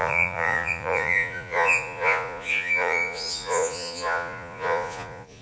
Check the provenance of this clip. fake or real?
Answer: fake